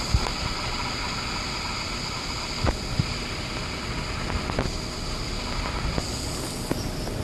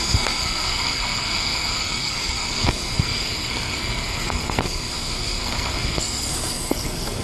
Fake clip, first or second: second